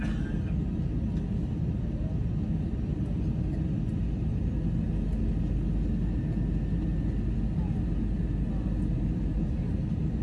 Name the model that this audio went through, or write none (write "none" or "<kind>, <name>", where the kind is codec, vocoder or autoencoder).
none